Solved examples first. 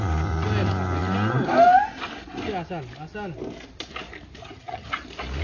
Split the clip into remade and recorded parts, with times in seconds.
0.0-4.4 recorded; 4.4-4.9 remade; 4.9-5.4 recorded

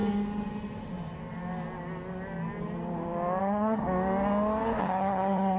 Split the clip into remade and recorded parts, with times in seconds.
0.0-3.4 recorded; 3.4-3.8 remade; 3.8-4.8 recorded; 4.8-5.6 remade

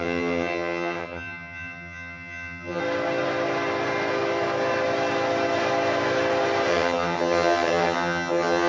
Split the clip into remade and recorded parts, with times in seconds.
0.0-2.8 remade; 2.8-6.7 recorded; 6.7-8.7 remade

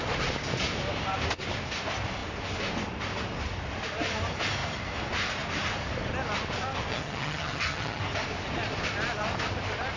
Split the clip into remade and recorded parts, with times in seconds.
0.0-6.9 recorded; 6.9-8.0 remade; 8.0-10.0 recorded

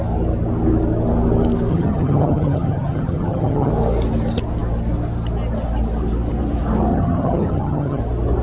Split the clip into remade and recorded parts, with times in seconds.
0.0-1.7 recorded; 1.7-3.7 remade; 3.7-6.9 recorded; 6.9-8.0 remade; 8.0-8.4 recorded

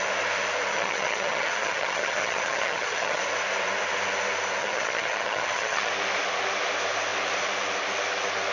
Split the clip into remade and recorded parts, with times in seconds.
0.0-0.7 recorded; 0.7-3.2 remade; 3.2-4.6 recorded; 4.6-5.9 remade; 5.9-8.5 recorded